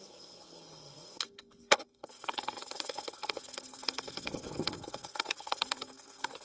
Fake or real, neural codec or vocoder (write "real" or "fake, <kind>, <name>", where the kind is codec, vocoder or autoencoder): fake, codec, SNAC